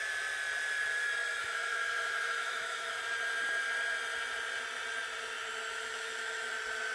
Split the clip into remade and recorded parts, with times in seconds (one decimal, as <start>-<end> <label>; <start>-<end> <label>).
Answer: 0.0-1.4 recorded; 1.4-3.0 remade; 3.0-5.7 recorded; 5.7-6.5 remade; 6.5-6.9 recorded